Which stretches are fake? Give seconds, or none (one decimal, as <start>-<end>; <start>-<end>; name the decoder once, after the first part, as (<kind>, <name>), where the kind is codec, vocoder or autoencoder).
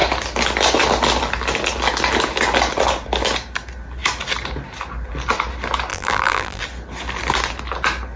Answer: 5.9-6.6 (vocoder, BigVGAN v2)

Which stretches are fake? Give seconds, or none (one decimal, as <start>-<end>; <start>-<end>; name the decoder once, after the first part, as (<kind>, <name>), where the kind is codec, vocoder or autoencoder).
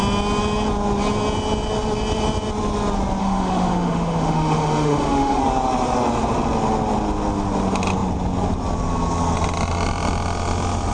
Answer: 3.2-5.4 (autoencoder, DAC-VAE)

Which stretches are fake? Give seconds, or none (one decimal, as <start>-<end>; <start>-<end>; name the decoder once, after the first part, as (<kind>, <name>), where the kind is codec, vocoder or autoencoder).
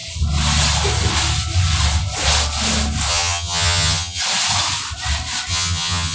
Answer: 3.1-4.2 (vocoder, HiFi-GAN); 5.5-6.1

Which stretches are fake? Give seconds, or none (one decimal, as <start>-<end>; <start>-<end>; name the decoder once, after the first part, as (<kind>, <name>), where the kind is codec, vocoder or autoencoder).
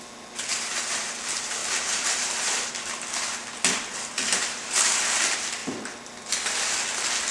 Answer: 0.5-1.1 (vocoder, BigVGAN v2); 1.6-2.7; 4.3-5.0